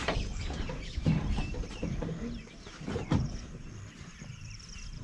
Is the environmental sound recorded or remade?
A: remade